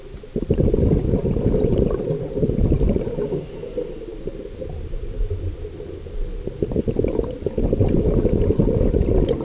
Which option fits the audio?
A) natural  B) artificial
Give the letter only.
A